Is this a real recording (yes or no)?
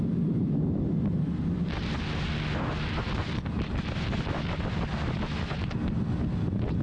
yes